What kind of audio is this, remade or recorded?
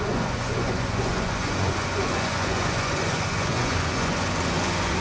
remade